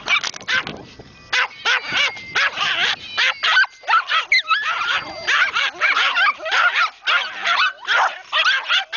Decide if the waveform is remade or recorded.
recorded